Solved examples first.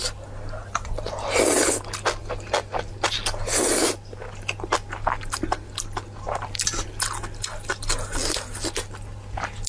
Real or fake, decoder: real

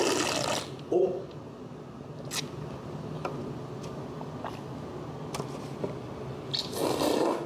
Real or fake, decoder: real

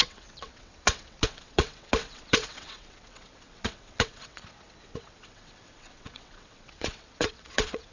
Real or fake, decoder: fake, vocoder, WaveNeXt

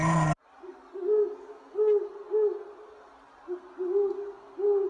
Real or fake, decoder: real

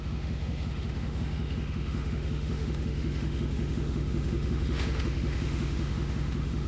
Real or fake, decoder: fake, autoencoder, DAC-VAE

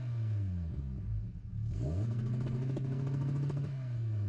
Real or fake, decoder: fake, codec, SNAC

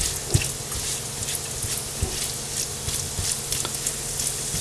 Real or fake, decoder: real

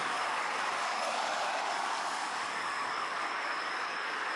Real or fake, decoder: fake, codec, DAC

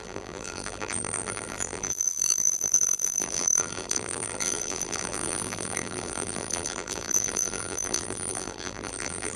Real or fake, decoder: fake, vocoder, BigVGAN v2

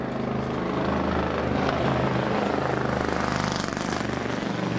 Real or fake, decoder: real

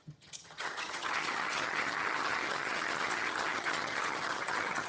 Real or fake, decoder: fake, vocoder, HiFi-GAN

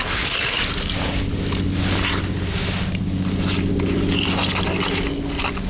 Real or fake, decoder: real